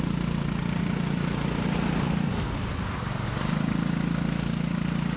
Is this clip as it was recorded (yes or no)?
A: yes